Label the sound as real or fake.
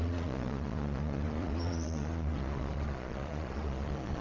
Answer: fake